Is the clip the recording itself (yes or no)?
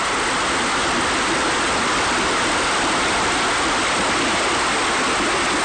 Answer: yes